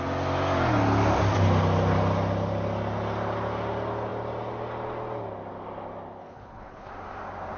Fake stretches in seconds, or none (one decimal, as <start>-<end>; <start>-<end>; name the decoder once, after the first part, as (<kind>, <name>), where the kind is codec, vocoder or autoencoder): 6.2-6.9 (codec, HILCodec)